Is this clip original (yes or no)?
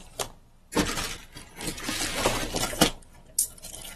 yes